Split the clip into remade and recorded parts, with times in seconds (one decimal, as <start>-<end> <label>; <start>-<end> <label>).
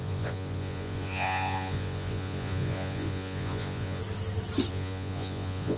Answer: 0.0-4.0 remade; 4.0-4.7 recorded; 4.7-5.8 remade